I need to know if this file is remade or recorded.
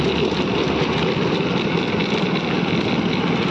recorded